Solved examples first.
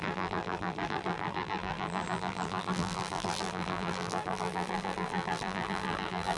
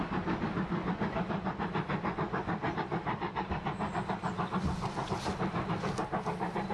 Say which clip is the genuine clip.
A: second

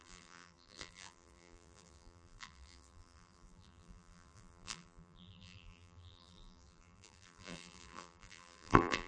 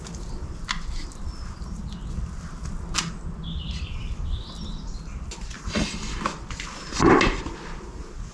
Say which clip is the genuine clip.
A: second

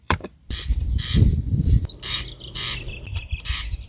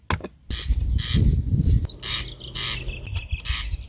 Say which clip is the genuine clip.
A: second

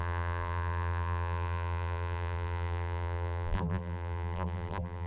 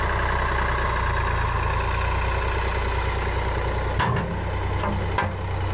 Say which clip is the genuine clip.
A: second